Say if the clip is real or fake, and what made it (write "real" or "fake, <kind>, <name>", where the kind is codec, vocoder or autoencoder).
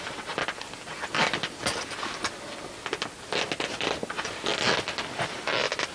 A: real